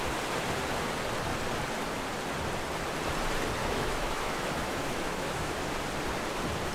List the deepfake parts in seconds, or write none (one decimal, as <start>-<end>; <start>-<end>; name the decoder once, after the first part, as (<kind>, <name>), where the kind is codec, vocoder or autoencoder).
3.6-5.7 (autoencoder, DAC-VAE)